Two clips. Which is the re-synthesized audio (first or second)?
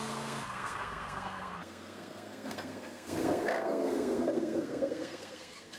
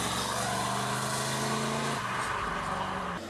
first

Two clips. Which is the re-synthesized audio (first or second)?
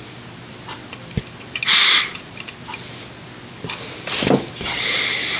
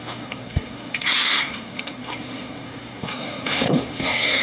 second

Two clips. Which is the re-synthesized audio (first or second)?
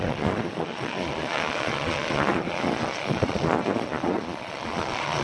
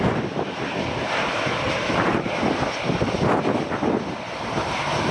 first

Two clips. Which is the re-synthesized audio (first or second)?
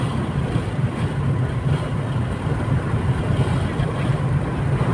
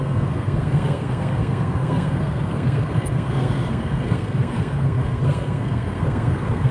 second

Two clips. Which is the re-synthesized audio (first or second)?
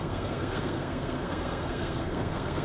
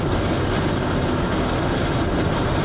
first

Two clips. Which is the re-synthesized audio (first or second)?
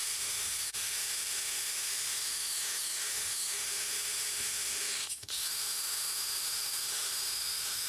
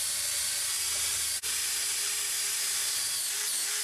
first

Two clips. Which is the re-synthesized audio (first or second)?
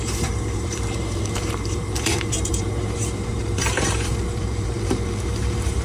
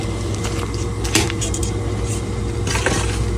first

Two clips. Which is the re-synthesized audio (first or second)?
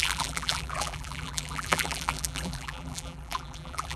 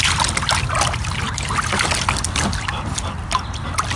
first